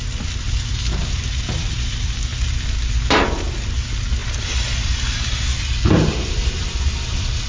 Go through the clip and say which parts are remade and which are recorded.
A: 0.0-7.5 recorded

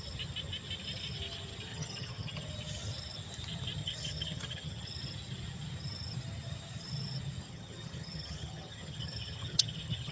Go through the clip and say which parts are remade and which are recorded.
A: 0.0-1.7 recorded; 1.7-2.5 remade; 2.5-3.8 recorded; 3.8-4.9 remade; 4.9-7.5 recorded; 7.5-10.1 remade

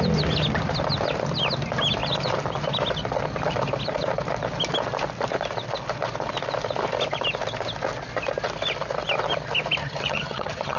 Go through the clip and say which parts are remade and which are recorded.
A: 0.0-9.8 recorded; 9.8-10.8 remade

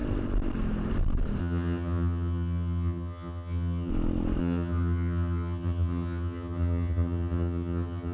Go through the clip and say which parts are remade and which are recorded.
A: 0.0-1.4 recorded; 1.4-3.9 remade; 3.9-4.4 recorded; 4.4-8.1 remade

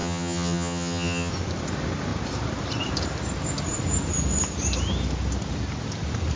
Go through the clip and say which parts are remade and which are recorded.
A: 0.0-1.3 remade; 1.3-6.4 recorded